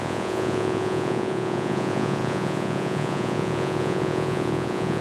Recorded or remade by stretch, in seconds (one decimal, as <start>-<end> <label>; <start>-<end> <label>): 0.0-5.0 remade